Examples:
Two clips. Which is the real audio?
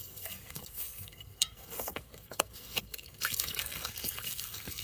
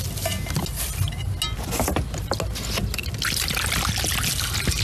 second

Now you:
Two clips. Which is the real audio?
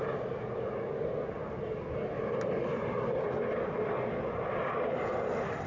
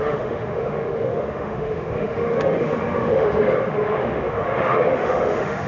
first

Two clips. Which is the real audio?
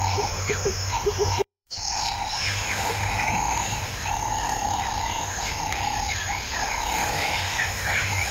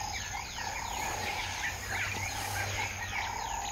second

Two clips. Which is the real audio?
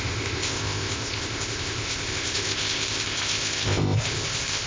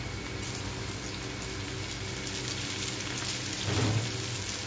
second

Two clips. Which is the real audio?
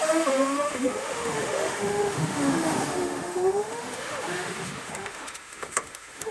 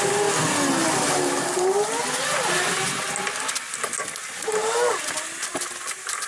second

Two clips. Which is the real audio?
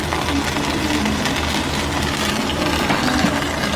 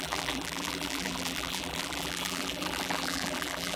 first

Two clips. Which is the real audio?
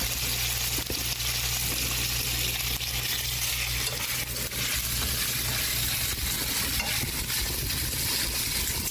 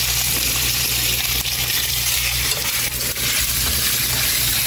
first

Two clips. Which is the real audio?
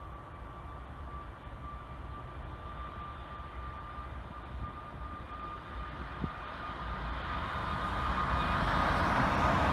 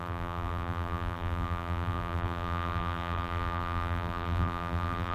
first